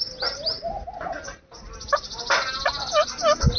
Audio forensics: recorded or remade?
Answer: recorded